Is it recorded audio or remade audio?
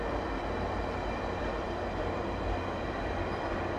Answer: recorded